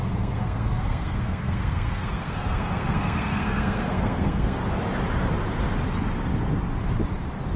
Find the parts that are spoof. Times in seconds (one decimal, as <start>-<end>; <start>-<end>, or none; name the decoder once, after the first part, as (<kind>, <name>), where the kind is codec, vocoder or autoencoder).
0.0-4.6 (codec, SNAC)